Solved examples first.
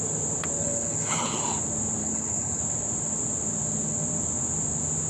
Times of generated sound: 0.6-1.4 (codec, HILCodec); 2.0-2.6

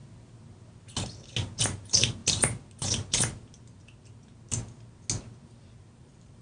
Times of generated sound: 1.6-2.2 (vocoder, BigVGAN v2); 6.0-6.4

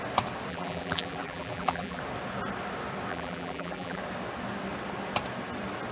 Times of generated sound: 0.5-2.0 (vocoder, BigVGAN v2); 3.1-4.0

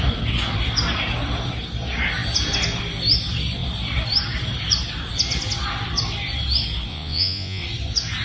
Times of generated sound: 6.9-7.6 (vocoder, Vocos)

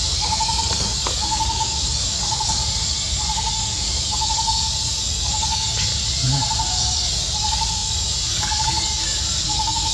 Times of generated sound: 0.0-5.9 (codec, DAC); 6.7-9.9